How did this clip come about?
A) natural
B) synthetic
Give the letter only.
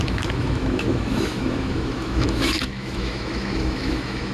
B